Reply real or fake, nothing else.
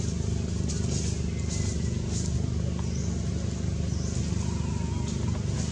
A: real